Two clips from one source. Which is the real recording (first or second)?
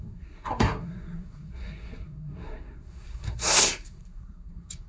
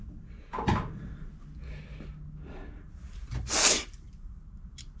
second